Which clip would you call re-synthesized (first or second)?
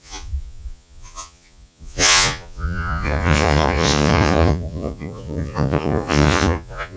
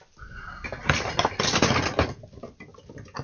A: first